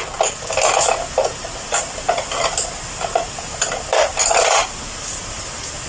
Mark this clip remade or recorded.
recorded